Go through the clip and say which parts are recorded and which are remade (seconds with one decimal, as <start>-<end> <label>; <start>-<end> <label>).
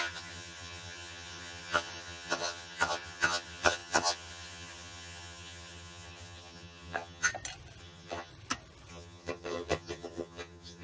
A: 0.0-7.3 remade; 7.3-7.8 recorded; 7.8-8.3 remade; 8.3-8.9 recorded; 8.9-10.8 remade